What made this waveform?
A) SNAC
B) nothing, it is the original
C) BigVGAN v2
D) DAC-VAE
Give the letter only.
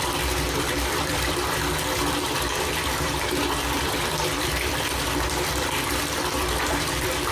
C